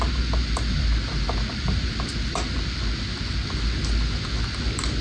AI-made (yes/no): no